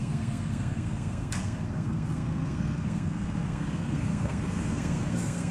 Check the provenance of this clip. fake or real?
fake